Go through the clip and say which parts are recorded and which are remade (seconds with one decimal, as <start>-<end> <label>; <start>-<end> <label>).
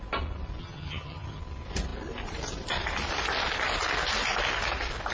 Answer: 0.0-0.6 recorded; 0.6-1.4 remade; 1.4-5.1 recorded